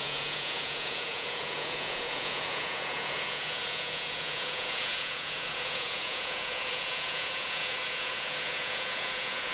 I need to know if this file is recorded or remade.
remade